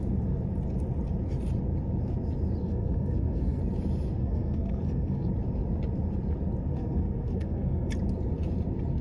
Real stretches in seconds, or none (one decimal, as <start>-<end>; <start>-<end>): 0.0-2.6; 3.6-4.2; 5.3-6.7; 7.9-9.0